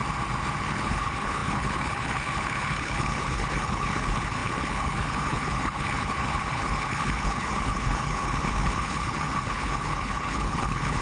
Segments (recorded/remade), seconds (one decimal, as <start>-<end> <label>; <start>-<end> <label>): 0.0-0.6 recorded; 0.6-11.0 remade